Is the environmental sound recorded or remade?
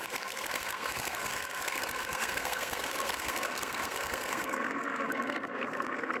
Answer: remade